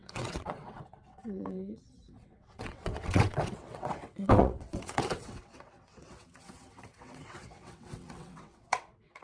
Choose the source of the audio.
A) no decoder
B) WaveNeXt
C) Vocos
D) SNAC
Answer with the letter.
B